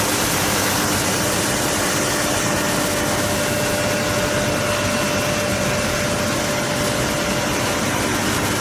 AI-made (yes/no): no